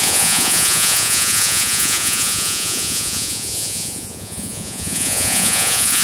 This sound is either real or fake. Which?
fake